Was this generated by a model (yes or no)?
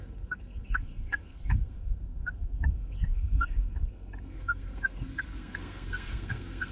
yes